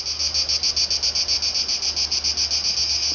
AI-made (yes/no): no